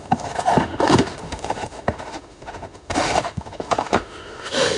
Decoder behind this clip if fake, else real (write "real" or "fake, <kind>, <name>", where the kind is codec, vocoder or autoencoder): fake, autoencoder, DAC-VAE